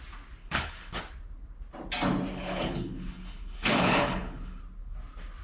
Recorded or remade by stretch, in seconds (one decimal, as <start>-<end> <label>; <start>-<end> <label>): 0.0-0.4 recorded; 0.4-1.0 remade; 1.0-2.3 recorded; 2.3-4.6 remade; 4.6-5.4 recorded